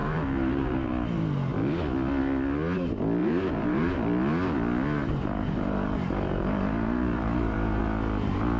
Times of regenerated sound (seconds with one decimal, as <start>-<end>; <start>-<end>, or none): 0.0-0.9; 3.2-3.9; 5.0-7.8